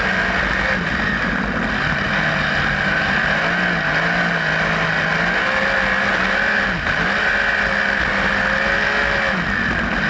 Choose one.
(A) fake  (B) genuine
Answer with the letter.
B